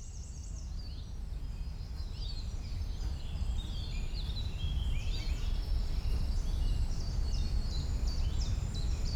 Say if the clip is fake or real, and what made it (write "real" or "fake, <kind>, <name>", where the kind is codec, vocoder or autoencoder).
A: fake, vocoder, BigVGAN v2